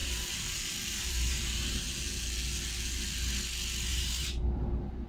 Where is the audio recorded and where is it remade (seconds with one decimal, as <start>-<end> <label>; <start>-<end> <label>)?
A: 0.0-1.9 remade; 1.9-3.9 recorded; 3.9-5.1 remade